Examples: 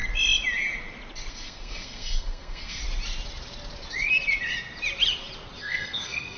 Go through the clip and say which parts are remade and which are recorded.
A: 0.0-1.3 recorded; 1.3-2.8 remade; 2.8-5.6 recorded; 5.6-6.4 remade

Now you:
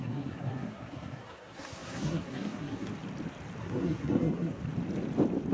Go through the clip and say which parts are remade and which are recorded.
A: 0.0-2.9 remade; 2.9-3.6 recorded; 3.6-4.6 remade; 4.6-5.5 recorded